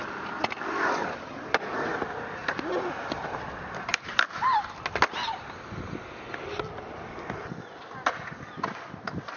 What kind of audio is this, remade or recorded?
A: recorded